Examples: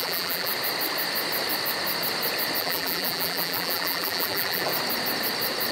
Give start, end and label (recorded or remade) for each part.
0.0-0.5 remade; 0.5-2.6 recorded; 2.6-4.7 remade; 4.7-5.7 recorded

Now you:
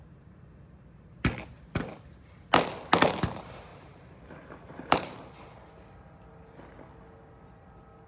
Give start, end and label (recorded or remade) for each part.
0.0-3.7 recorded; 3.7-5.3 remade; 5.3-8.1 recorded

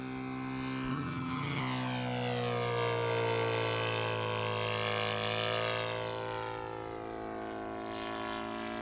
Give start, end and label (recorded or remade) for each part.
0.0-0.9 recorded; 0.9-1.6 remade; 1.6-8.8 recorded

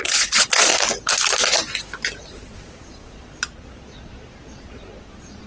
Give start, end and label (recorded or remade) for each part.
0.0-0.7 remade; 0.7-2.2 recorded; 2.2-5.5 remade

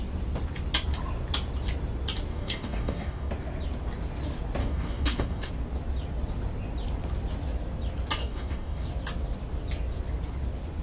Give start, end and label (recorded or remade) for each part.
0.0-2.3 recorded; 2.3-3.3 remade; 3.3-4.6 recorded; 4.6-5.5 remade; 5.5-8.2 recorded; 8.2-8.9 remade; 8.9-10.8 recorded

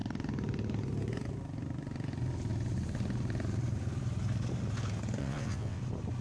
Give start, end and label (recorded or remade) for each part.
0.0-5.2 recorded; 5.2-5.8 remade; 5.8-6.2 recorded

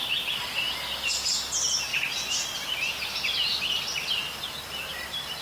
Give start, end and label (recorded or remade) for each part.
0.0-5.4 recorded

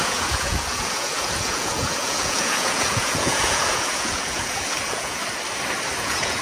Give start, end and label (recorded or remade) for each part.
0.0-5.2 remade; 5.2-6.0 recorded; 6.0-6.4 remade